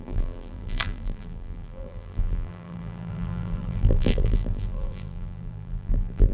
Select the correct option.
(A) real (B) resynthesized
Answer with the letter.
B